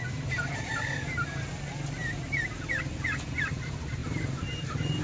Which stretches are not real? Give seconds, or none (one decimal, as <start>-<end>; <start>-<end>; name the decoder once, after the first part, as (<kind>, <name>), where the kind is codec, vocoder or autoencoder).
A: 0.0-1.5 (vocoder, BigVGAN v2); 4.0-5.0